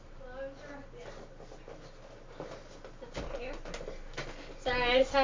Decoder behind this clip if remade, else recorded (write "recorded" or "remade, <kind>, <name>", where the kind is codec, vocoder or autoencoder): recorded